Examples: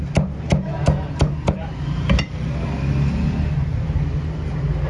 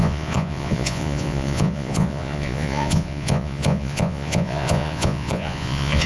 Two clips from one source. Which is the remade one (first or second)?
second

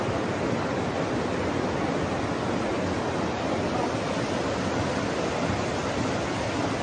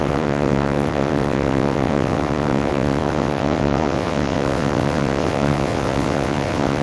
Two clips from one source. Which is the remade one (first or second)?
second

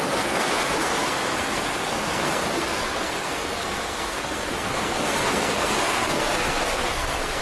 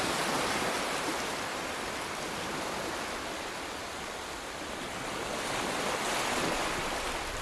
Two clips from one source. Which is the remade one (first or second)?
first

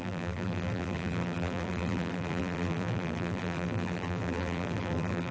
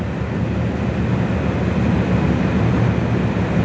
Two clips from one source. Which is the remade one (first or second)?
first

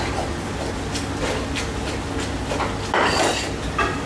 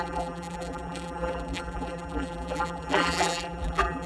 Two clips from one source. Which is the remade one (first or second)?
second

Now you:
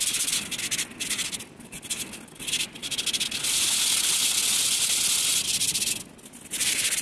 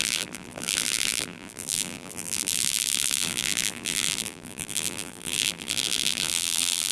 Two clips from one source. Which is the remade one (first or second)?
second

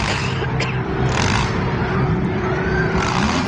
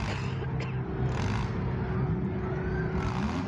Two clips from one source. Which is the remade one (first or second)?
first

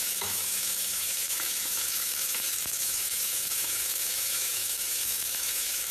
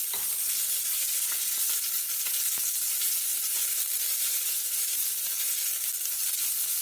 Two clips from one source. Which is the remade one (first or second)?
first